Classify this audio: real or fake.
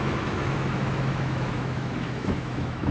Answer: fake